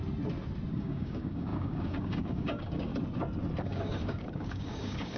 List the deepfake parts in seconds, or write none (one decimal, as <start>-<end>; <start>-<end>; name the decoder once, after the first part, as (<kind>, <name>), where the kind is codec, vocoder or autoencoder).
0.7-2.9 (codec, DAC); 3.6-5.2